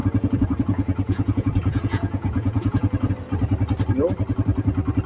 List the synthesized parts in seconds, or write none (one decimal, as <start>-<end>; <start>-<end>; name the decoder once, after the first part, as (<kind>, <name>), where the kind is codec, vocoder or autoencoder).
0.0-3.1 (vocoder, Vocos)